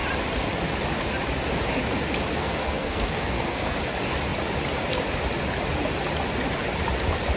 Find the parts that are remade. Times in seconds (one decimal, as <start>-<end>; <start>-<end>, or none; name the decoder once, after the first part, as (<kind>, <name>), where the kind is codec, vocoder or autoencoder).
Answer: 2.3-3.8 (codec, SNAC)